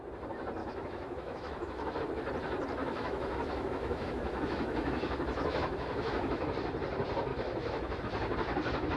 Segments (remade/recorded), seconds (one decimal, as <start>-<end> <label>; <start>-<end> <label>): 0.0-0.6 recorded; 0.6-2.0 remade; 2.0-2.8 recorded; 2.8-6.5 remade; 6.5-7.3 recorded; 7.3-8.0 remade; 8.0-9.0 recorded